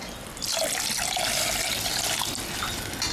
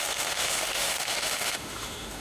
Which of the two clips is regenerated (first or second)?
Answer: second